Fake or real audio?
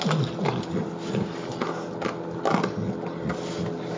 real